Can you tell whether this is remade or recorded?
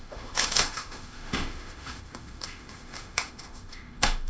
remade